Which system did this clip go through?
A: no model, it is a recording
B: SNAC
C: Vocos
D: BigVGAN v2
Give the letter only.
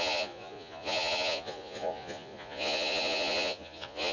C